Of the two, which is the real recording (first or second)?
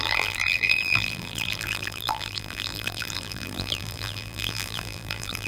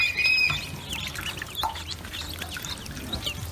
second